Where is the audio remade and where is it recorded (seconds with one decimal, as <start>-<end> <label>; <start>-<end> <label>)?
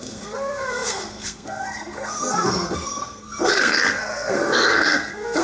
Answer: 0.0-5.4 remade